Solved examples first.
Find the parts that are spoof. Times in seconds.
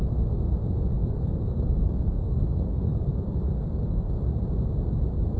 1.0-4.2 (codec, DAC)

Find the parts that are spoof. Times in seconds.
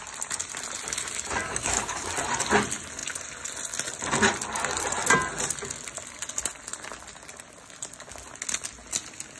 1.4-2.1 (codec, DAC)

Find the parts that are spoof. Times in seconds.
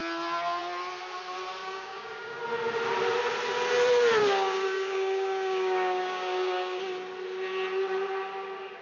1.6-2.4 (codec, DAC); 4.2-6.8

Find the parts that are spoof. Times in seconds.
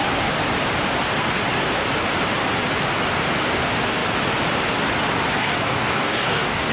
5.4-6.7 (codec, DAC)